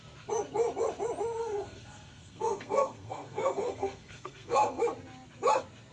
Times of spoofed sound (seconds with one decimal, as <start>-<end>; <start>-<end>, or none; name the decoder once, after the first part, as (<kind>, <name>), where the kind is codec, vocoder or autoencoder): 1.4-4.8 (codec, SNAC)